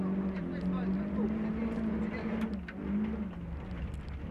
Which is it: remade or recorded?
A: recorded